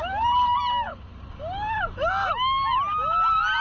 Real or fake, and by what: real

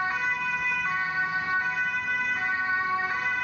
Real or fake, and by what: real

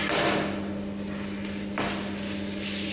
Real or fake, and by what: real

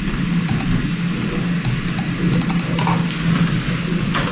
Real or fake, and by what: real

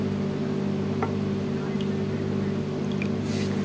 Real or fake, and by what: real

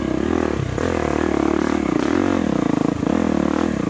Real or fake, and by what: real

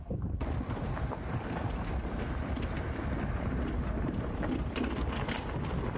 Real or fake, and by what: real